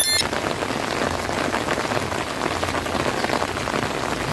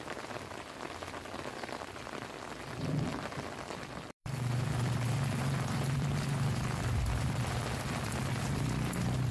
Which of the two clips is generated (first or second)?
second